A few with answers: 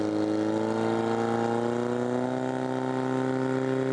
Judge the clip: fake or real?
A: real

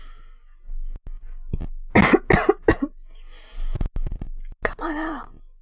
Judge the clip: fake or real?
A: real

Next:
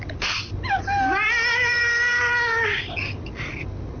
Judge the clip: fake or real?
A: real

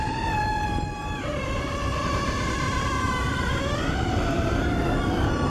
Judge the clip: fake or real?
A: fake